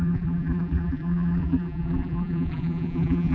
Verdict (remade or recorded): remade